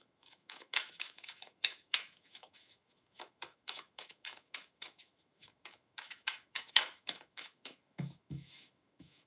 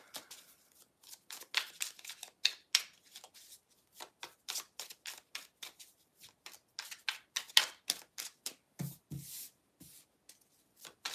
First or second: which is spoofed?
first